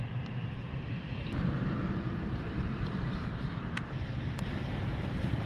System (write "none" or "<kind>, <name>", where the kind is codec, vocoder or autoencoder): vocoder, BigVGAN v2